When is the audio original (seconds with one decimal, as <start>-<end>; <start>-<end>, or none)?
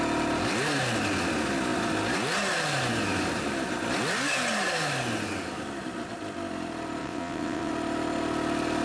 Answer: 0.0-7.0; 7.7-8.8